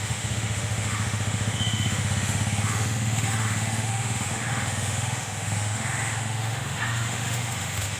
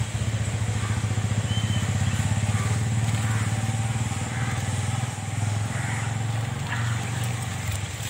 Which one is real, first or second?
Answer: second